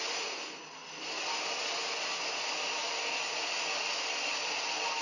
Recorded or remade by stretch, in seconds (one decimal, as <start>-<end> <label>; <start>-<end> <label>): 0.0-5.0 recorded